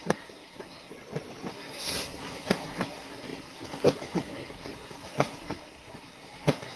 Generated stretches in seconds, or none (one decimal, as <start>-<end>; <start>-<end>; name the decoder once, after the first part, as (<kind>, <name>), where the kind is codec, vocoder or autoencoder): 0.0-0.9 (codec, SNAC); 1.5-6.8